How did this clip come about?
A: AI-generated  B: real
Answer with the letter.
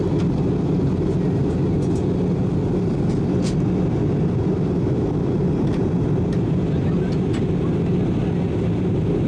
B